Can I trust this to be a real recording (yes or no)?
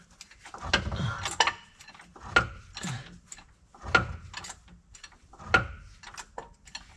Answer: yes